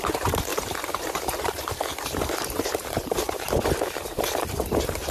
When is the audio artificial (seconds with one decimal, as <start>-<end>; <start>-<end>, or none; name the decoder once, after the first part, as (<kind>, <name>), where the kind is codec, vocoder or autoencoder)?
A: 0.0-5.1 (vocoder, BigVGAN v2)